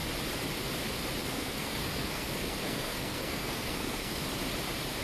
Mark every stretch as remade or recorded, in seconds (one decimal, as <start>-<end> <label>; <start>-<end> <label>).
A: 0.0-1.2 recorded; 1.2-4.2 remade; 4.2-5.0 recorded